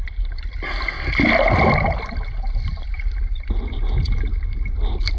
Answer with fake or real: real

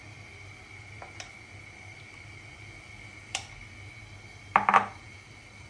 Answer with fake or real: real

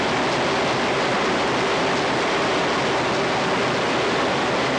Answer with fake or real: real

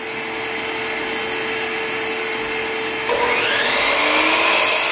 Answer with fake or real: real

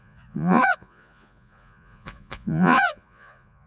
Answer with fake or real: fake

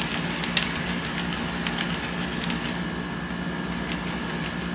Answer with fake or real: real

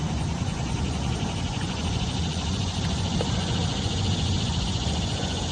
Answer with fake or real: fake